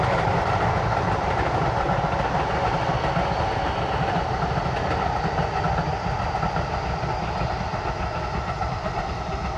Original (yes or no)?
yes